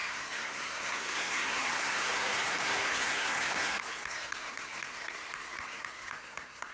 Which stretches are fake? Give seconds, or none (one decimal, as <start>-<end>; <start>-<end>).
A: 0.0-6.7